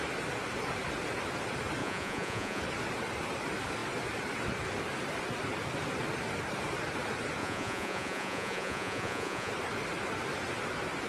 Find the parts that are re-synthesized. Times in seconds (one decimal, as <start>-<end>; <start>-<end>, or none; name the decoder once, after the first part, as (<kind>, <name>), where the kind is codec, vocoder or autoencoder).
1.8-2.6 (vocoder, Vocos); 7.4-9.5

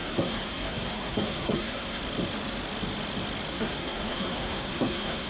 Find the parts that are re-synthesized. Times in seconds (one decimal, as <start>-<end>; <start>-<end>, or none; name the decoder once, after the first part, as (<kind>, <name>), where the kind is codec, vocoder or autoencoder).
0.0-2.0 (codec, SNAC); 3.5-5.3